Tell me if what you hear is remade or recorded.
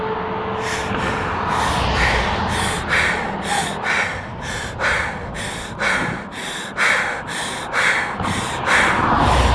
recorded